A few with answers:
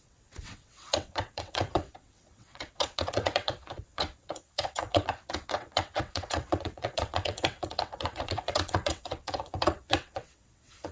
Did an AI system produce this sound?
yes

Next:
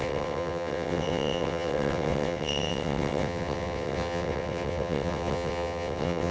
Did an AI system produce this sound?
yes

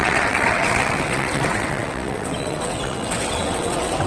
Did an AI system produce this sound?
yes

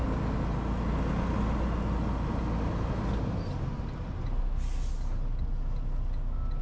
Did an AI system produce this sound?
no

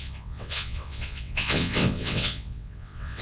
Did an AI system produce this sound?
yes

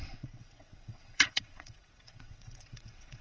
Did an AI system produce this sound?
yes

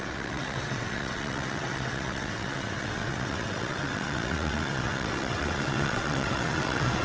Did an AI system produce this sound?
yes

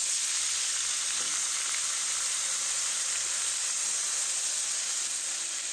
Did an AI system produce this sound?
no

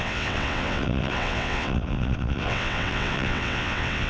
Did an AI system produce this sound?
yes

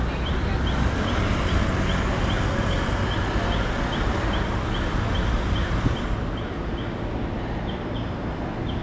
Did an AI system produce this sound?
no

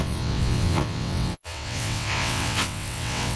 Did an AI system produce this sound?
yes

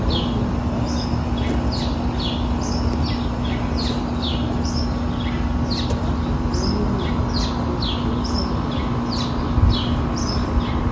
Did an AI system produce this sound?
no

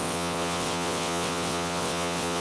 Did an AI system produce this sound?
yes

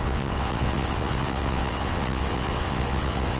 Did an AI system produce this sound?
yes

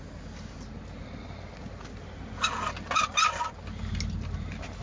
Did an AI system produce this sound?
no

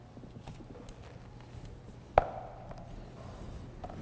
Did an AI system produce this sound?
no